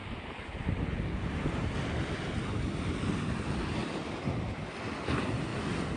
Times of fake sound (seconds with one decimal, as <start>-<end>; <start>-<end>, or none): 0.0-0.7; 3.8-4.7